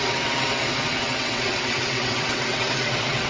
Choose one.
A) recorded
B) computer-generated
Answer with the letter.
B